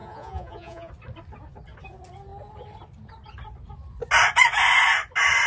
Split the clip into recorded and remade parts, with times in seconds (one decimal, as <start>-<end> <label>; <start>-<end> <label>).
0.0-0.9 remade; 0.9-5.5 recorded